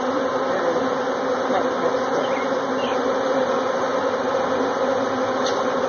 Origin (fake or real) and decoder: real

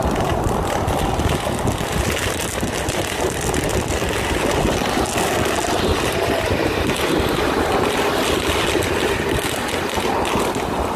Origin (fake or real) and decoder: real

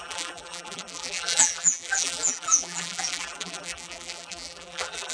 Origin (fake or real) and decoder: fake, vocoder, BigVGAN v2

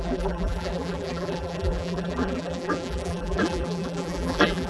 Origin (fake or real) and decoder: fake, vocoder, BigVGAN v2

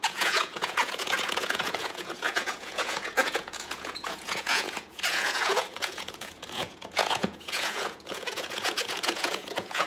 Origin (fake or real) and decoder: fake, vocoder, Vocos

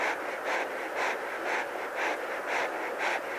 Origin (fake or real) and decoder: real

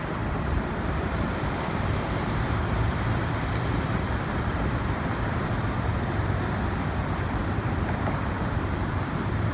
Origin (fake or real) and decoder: fake, vocoder, BigVGAN v2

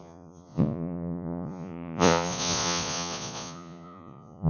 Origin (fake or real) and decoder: fake, vocoder, Vocos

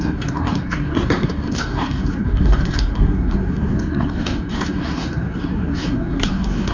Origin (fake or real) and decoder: fake, codec, SNAC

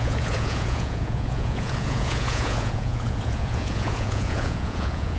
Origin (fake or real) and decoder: fake, vocoder, Vocos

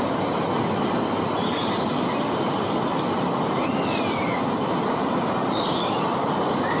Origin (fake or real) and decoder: real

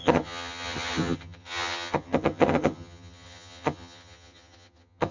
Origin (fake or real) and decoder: fake, vocoder, HiFi-GAN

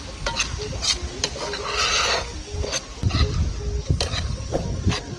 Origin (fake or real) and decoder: real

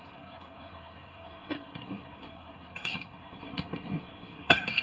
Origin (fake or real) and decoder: fake, codec, SNAC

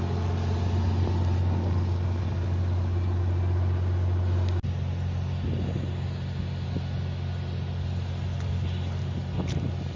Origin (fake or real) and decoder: real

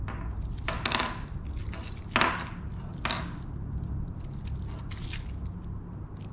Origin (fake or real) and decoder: real